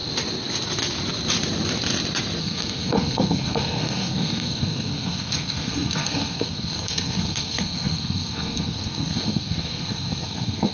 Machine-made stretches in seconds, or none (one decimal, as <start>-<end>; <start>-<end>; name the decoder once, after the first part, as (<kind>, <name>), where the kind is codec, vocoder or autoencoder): 2.4-10.7 (codec, SNAC)